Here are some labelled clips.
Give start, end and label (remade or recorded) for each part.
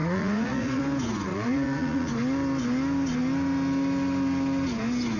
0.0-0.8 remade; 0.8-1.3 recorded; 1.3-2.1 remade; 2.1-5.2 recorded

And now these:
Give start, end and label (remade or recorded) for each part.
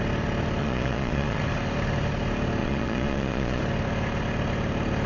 0.0-0.6 recorded; 0.6-1.4 remade; 1.4-2.6 recorded; 2.6-3.6 remade; 3.6-5.1 recorded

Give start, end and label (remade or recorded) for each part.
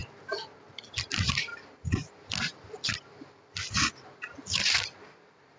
0.0-5.6 recorded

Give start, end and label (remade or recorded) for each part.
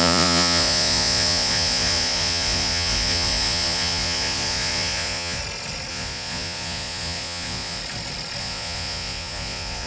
0.0-5.4 remade; 5.4-5.9 recorded; 5.9-7.8 remade; 7.8-8.4 recorded; 8.4-9.9 remade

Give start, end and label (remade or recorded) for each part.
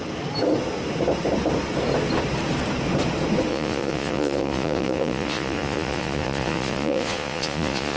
0.0-3.5 recorded; 3.5-8.0 remade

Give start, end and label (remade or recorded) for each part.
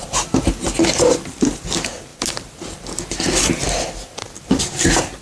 0.0-5.2 recorded